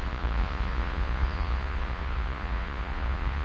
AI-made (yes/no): yes